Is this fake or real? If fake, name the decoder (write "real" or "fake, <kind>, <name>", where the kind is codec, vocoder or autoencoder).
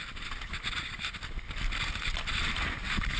real